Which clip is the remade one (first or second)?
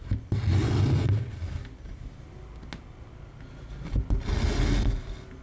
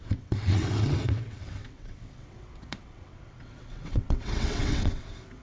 second